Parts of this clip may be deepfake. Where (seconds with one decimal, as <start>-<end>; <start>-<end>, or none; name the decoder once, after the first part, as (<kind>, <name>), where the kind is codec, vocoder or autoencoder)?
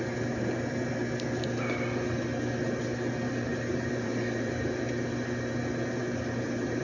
3.5-4.9 (vocoder, BigVGAN v2); 6.0-6.8